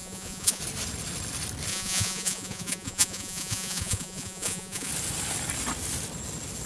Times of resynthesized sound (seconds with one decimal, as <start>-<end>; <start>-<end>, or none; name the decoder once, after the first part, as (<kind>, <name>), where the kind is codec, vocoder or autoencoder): 0.0-0.6 (vocoder, Vocos); 1.7-4.9